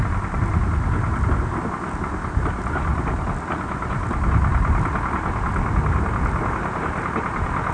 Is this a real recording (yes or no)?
yes